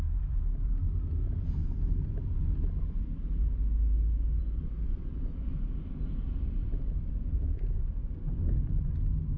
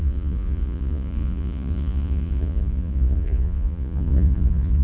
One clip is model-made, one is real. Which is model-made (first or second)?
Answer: second